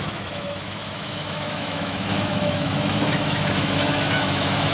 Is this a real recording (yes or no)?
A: no